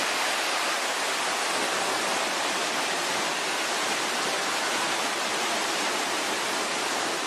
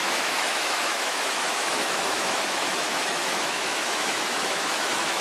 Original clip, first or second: first